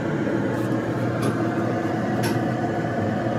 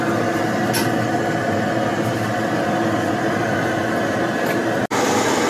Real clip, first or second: second